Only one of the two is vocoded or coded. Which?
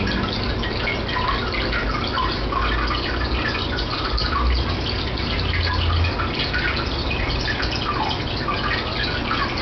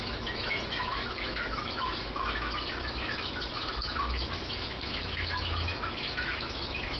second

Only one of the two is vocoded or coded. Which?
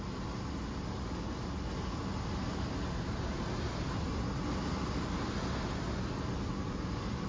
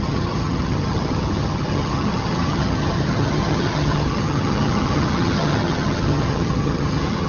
second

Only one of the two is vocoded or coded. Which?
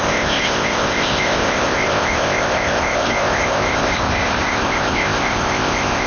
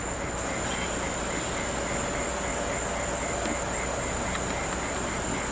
first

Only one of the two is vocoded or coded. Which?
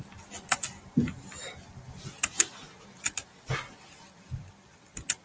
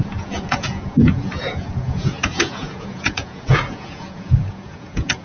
second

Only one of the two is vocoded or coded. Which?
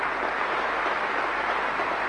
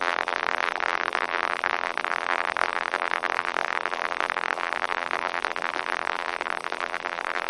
second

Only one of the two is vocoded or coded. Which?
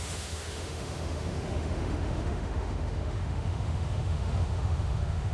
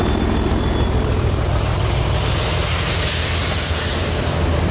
first